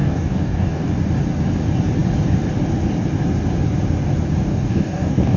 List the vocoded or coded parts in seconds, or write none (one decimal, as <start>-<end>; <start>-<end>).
0.0-0.9; 4.5-5.4